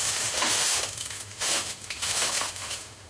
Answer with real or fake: fake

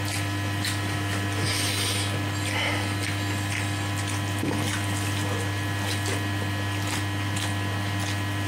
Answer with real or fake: real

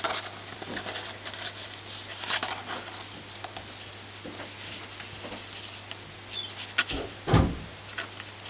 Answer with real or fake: real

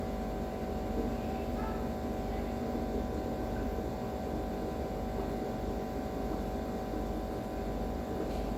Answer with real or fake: real